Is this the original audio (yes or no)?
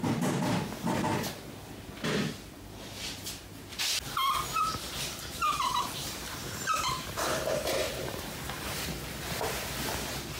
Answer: yes